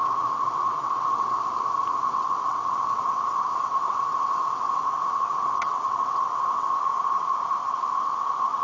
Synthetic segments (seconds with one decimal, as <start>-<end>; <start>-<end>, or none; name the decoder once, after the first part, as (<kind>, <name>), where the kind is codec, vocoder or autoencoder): 0.0-1.4 (vocoder, WaveNeXt); 2.1-6.9; 8.0-8.6